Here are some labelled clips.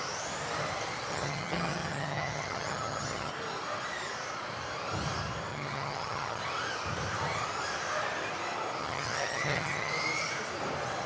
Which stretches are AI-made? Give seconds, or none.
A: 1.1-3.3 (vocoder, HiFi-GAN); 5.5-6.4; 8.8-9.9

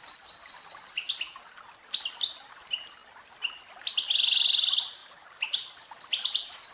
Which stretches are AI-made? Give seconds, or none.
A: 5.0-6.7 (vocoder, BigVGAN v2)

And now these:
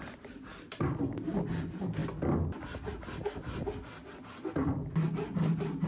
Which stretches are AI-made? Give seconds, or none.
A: 0.0-0.5 (vocoder, BigVGAN v2); 1.5-2.0; 5.5-5.9

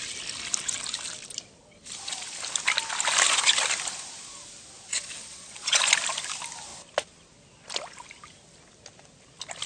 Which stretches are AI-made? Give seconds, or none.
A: 4.9-5.8 (vocoder, Vocos)

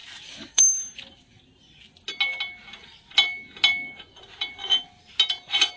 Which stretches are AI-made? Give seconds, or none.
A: 0.0-0.6 (vocoder, BigVGAN v2)

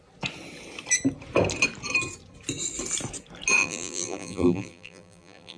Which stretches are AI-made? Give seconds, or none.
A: 3.6-5.6 (vocoder, BigVGAN v2)